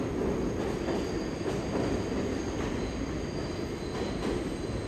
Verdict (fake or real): real